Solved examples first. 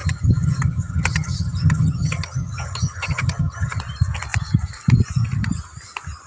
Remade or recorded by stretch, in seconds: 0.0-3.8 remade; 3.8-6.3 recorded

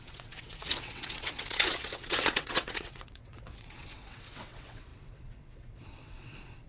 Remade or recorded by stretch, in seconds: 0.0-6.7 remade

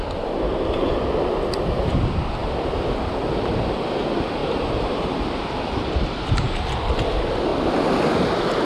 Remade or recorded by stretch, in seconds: 0.0-4.4 recorded; 4.4-5.0 remade; 5.0-8.6 recorded

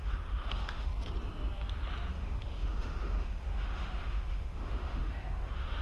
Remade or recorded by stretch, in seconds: 0.0-0.9 remade; 0.9-2.1 recorded; 2.1-5.8 remade